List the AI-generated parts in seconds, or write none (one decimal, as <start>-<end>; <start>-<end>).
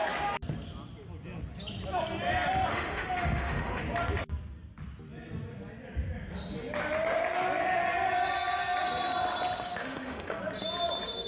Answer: 2.7-3.8; 9.7-10.4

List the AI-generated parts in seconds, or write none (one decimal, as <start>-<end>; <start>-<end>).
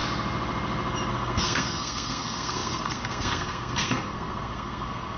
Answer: 1.1-5.2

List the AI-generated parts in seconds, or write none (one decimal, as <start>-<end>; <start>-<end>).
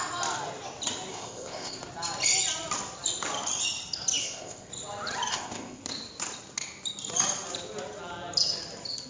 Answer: 1.1-1.8; 4.2-4.7; 5.3-5.8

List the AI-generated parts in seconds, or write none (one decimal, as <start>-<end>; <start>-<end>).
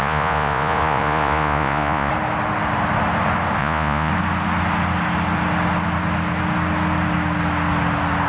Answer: 0.0-2.1; 3.6-4.1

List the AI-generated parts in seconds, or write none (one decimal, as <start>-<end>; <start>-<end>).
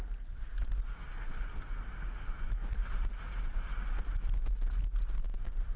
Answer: none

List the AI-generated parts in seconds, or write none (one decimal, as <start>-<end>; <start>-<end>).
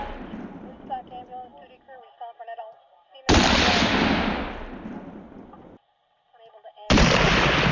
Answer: none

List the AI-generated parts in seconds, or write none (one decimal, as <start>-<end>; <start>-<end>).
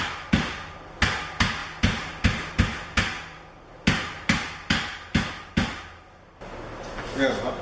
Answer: none